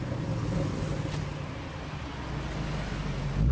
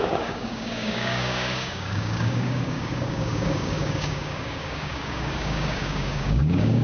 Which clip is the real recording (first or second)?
first